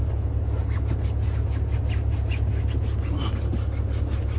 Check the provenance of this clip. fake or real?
real